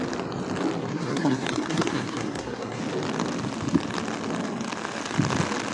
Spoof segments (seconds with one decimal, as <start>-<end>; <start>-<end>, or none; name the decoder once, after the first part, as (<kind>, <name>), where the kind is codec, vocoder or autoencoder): 0.8-2.8 (codec, SNAC)